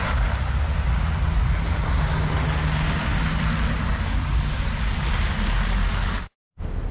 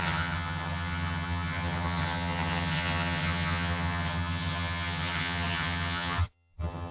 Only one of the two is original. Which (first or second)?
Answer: first